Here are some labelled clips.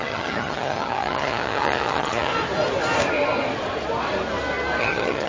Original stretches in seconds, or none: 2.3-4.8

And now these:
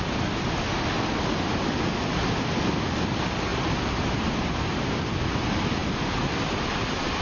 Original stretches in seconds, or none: 0.0-3.5; 5.1-7.2

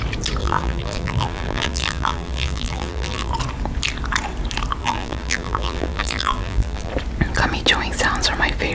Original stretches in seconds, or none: 0.0-0.4; 3.3-4.8; 6.9-8.7

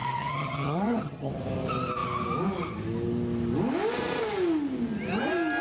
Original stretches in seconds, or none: 1.3-5.6

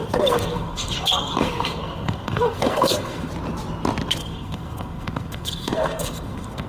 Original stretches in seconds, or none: 3.3-4.2

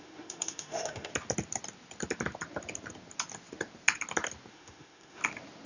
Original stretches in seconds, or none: 1.1-4.5; 5.2-5.7

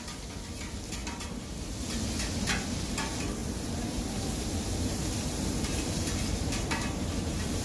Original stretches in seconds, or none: none

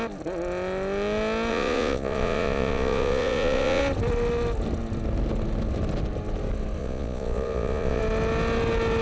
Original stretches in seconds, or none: 0.0-1.5; 3.8-6.8; 8.0-9.0